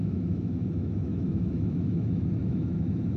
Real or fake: fake